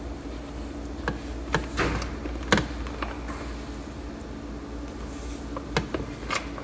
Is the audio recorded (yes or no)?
yes